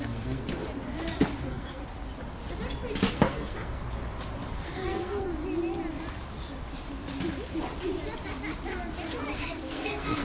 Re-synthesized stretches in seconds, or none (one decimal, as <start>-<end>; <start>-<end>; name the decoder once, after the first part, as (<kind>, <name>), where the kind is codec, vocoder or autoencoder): 0.0-0.6 (codec, SNAC); 1.4-1.8; 3.1-3.8; 4.5-5.3; 9.3-10.2